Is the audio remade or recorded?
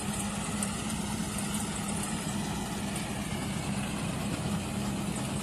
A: recorded